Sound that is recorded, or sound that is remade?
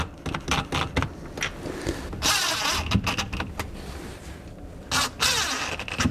recorded